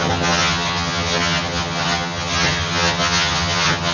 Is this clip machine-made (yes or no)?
yes